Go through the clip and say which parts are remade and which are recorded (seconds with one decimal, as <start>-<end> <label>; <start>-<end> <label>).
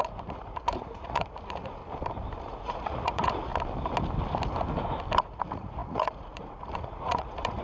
0.0-1.8 remade; 1.8-2.4 recorded; 2.4-3.5 remade; 3.5-5.2 recorded; 5.2-7.6 remade